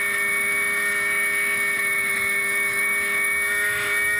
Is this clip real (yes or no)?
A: no